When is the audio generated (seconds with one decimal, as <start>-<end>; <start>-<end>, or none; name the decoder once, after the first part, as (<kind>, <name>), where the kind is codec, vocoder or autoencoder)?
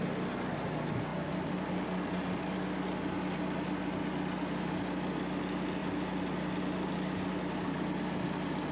none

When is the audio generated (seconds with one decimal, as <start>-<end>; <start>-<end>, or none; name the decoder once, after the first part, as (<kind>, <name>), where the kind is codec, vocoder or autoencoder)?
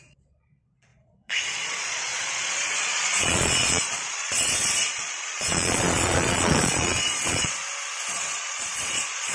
0.0-7.6 (vocoder, Vocos); 8.1-9.3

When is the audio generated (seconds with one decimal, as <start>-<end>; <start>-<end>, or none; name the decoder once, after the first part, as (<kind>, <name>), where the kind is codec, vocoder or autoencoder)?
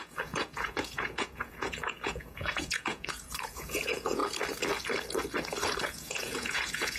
0.0-4.2 (vocoder, Vocos); 5.8-7.0